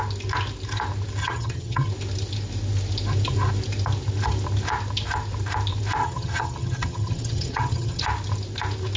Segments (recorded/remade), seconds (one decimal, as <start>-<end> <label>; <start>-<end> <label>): 0.0-1.2 recorded; 1.2-1.9 remade; 1.9-6.0 recorded; 6.0-8.0 remade; 8.0-9.0 recorded